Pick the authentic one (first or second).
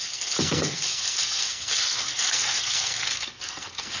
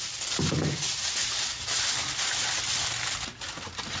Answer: second